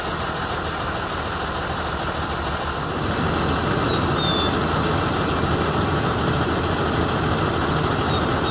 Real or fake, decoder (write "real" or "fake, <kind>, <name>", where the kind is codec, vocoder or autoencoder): real